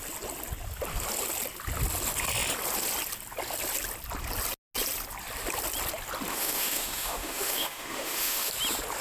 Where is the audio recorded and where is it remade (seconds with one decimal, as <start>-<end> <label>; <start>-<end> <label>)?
0.0-6.3 recorded; 6.3-8.5 remade; 8.5-9.0 recorded